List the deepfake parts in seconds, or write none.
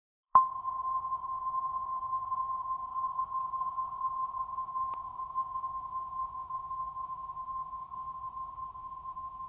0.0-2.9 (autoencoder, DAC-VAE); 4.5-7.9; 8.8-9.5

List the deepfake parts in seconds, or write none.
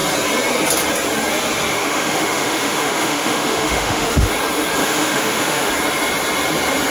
1.7-4.3 (autoencoder, DAC-VAE); 4.8-5.7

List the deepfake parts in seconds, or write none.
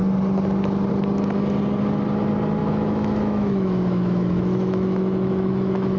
2.6-6.0 (autoencoder, DAC-VAE)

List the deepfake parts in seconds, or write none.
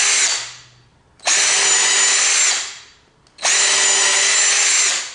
none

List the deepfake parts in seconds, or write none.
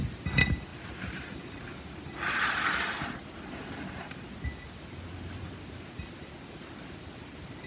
none